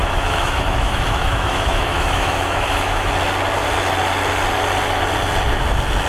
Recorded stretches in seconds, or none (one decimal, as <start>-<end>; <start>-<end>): 3.1-6.1